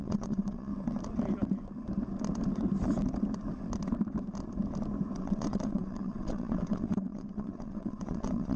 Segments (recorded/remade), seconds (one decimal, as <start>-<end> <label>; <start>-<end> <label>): 0.0-0.7 remade; 0.7-5.2 recorded; 5.2-8.6 remade